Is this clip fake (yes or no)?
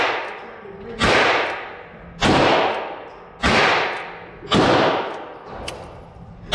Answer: no